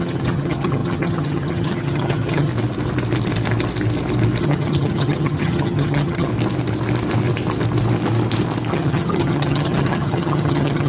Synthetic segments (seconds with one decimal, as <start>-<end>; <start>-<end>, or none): 0.0-2.5; 4.4-6.3; 8.7-10.9